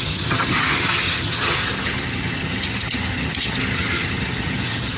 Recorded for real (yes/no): no